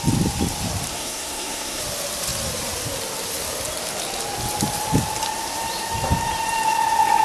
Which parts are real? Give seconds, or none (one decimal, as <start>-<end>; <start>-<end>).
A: 0.0-0.9; 1.8-7.2